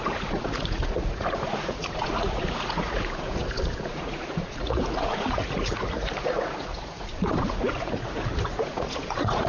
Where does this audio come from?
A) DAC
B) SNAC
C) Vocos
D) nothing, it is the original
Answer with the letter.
C